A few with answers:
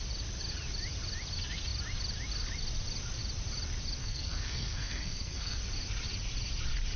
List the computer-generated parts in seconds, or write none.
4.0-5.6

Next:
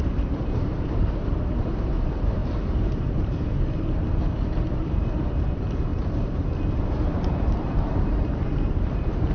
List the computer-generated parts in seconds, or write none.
0.0-9.3

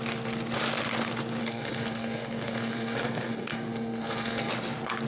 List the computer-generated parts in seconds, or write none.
1.4-4.5

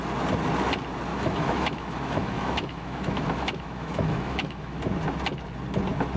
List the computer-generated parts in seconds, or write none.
1.1-4.8